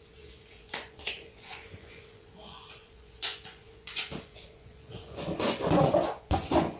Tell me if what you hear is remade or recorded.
remade